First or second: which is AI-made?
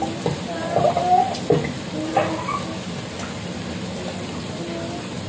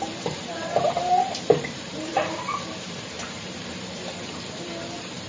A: second